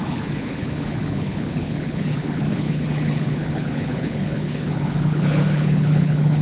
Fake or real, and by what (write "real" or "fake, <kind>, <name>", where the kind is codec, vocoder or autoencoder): fake, codec, HILCodec